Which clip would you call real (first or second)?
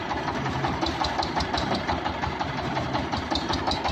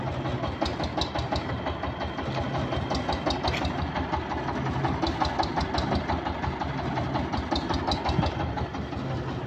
second